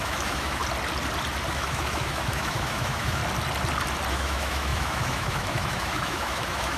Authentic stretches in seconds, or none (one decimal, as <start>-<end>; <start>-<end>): 0.6-1.5; 3.2-4.1